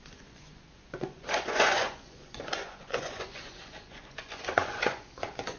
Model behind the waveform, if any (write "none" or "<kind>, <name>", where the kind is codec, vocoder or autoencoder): vocoder, Vocos